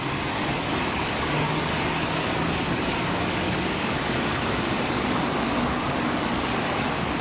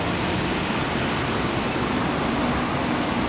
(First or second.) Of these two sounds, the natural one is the second